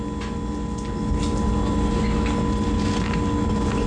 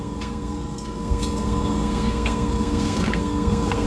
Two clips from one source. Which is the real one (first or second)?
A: first